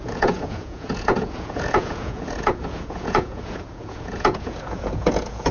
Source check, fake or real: fake